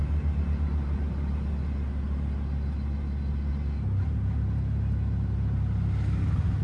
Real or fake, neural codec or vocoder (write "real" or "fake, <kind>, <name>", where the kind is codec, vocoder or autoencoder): real